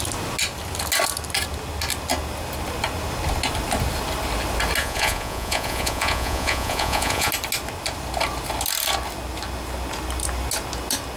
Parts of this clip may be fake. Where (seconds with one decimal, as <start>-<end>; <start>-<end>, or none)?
4.8-7.3

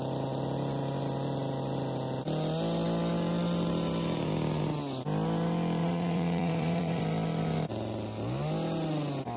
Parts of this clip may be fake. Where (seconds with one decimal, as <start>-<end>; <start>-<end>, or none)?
5.8-7.0

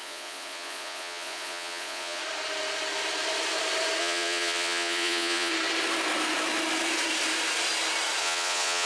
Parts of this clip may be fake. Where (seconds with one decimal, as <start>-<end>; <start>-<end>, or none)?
0.0-2.2; 4.0-5.5; 8.2-8.9

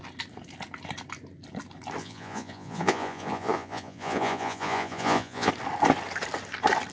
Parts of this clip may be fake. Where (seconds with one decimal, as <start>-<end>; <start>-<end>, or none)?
2.0-5.5

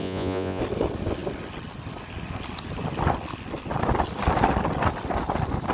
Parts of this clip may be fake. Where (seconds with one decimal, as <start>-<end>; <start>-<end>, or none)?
0.0-0.6

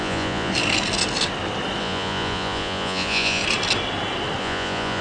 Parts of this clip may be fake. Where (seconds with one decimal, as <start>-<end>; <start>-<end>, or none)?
0.0-0.5; 1.8-3.4; 4.4-5.0

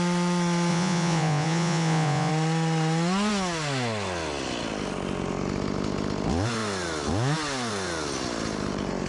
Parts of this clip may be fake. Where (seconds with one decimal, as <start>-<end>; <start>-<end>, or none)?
0.7-2.3